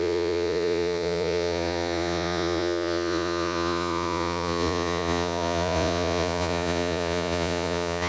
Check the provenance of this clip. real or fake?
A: fake